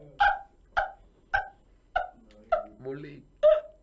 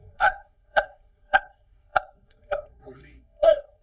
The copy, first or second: second